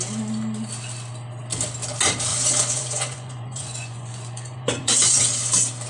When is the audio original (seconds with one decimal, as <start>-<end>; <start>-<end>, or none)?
0.0-2.3; 5.2-5.9